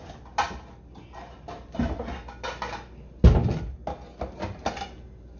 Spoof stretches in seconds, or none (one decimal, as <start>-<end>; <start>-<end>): none